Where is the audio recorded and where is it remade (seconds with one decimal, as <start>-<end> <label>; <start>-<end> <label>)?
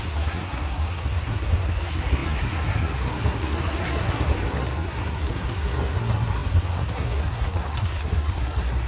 0.0-8.9 remade